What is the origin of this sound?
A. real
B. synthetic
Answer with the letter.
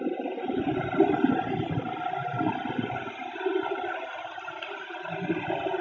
A